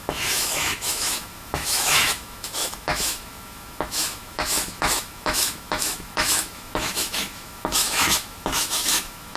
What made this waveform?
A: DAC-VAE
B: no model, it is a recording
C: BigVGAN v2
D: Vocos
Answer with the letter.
A